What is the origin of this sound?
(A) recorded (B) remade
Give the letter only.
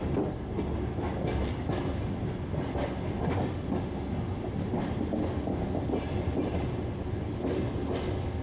A